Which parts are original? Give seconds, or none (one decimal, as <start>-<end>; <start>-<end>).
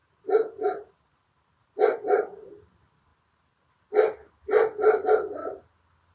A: 3.1-4.3; 5.4-6.1